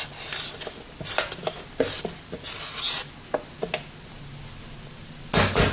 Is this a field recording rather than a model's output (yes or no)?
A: yes